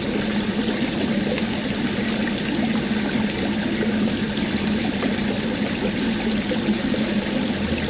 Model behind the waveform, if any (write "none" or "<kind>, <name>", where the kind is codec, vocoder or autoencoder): none